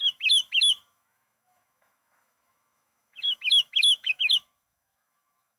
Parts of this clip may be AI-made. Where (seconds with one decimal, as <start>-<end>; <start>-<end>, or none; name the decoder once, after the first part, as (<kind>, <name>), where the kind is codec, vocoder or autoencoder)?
0.0-5.6 (autoencoder, DAC-VAE)